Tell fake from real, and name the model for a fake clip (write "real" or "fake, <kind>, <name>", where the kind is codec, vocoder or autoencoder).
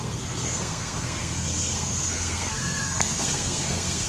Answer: fake, codec, SNAC